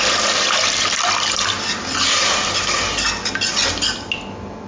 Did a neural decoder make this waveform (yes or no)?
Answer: no